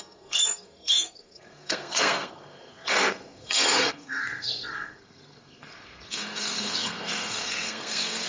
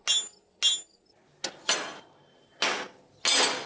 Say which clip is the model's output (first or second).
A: first